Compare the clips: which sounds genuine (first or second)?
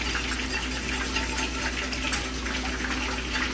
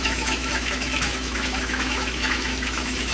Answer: first